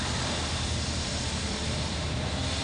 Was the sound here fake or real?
fake